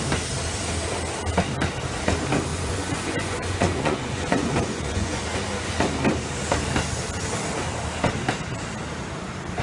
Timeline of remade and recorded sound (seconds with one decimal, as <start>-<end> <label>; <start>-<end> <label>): 0.0-2.5 recorded; 2.5-5.2 remade; 5.2-9.6 recorded